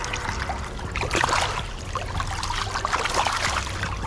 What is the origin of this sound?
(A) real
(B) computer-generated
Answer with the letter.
A